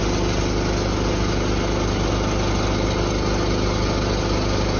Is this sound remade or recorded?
recorded